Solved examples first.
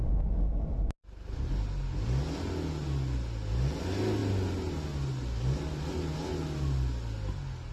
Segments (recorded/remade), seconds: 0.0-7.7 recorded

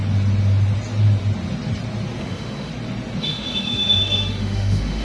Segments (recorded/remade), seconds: 0.0-2.2 recorded; 2.2-2.7 remade; 2.7-3.2 recorded; 3.2-5.0 remade

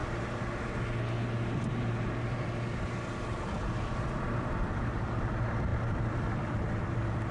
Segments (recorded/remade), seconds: 0.0-3.2 recorded; 3.2-7.3 remade

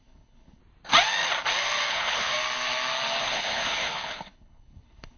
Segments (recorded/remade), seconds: 0.0-0.6 remade; 0.6-1.9 recorded; 1.9-2.3 remade; 2.3-3.2 recorded; 3.2-5.2 remade

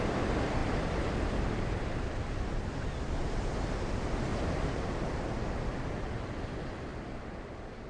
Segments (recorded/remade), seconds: 0.0-7.9 recorded

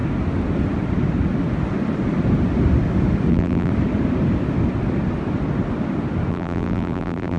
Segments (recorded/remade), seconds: 0.0-3.3 recorded; 3.3-3.7 remade; 3.7-6.3 recorded; 6.3-7.4 remade

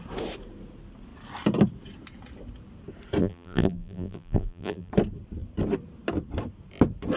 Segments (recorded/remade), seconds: 0.0-3.2 recorded; 3.2-4.9 remade; 4.9-7.2 recorded